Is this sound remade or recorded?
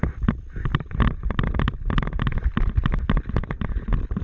recorded